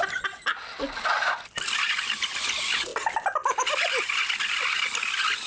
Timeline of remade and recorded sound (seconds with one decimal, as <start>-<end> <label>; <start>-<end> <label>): 0.0-5.5 recorded